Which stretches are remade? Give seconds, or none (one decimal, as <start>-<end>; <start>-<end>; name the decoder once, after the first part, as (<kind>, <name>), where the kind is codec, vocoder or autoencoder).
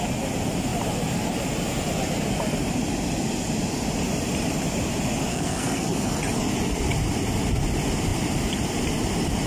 5.3-6.1 (codec, SNAC)